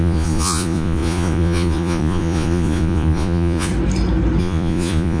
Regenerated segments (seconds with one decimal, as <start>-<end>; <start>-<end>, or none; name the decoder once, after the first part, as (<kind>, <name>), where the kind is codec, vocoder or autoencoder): 0.0-3.7 (vocoder, Vocos); 4.4-5.2